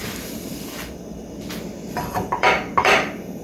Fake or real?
fake